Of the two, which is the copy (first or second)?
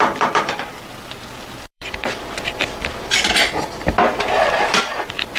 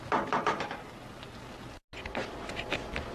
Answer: first